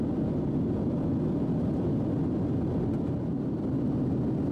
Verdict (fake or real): real